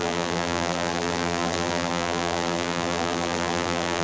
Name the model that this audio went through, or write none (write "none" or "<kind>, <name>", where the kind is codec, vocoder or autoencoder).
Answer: vocoder, BigVGAN v2